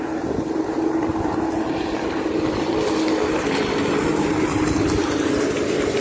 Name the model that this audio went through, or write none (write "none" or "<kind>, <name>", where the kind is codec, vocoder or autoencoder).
none